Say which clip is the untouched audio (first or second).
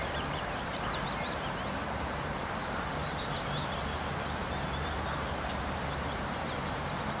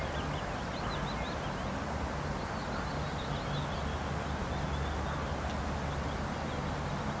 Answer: second